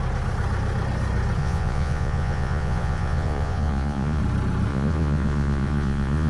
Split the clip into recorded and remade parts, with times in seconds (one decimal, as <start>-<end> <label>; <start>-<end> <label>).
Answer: 0.0-1.4 recorded; 1.4-4.2 remade; 4.2-4.7 recorded; 4.7-6.3 remade